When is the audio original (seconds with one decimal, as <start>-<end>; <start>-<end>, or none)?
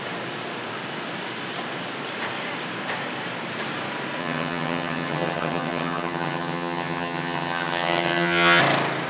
0.0-4.2; 8.6-9.1